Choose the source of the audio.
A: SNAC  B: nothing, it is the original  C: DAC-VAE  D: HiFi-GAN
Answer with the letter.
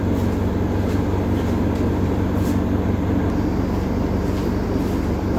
B